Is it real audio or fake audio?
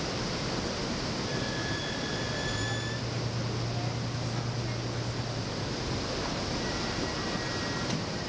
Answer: real